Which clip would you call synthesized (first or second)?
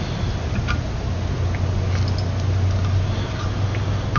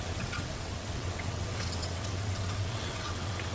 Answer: second